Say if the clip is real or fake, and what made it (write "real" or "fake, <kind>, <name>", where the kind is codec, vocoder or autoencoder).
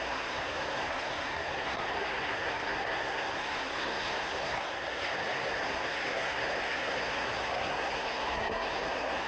fake, codec, SNAC